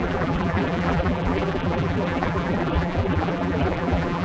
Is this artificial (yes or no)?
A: yes